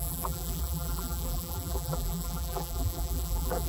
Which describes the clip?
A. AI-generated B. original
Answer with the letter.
A